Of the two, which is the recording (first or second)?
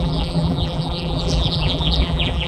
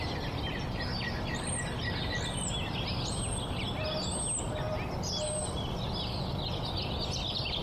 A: second